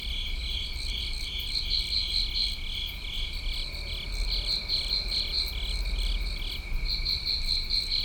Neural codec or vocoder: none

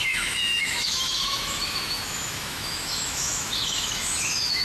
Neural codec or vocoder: autoencoder, DAC-VAE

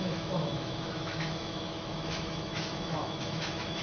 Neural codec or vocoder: autoencoder, DAC-VAE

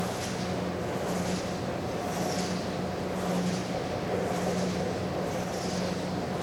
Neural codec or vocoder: none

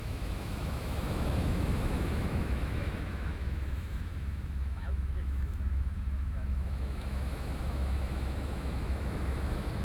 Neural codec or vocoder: autoencoder, DAC-VAE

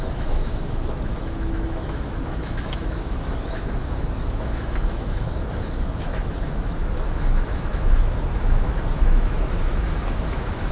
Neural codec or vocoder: autoencoder, DAC-VAE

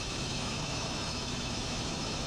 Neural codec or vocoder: autoencoder, DAC-VAE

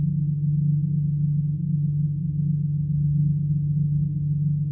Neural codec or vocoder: none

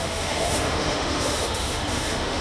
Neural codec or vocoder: autoencoder, DAC-VAE